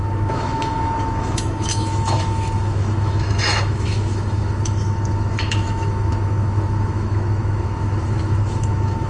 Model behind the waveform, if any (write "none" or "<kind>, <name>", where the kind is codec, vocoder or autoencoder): autoencoder, DAC-VAE